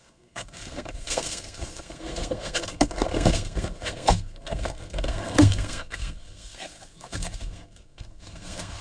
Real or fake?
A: fake